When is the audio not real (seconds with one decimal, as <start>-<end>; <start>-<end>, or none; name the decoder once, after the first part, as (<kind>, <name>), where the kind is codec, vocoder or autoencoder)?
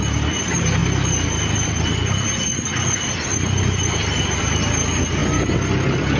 none